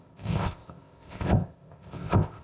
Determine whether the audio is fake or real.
fake